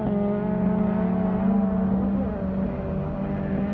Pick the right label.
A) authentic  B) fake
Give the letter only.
A